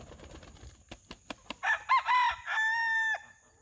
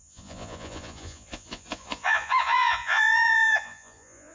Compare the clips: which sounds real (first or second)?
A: first